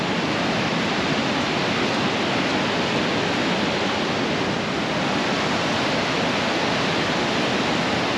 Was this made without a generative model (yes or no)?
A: yes